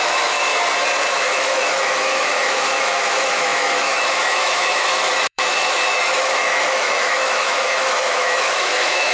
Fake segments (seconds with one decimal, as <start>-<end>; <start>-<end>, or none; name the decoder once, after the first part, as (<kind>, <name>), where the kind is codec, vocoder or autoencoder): 0.0-0.5 (autoencoder, DAC-VAE); 1.1-9.1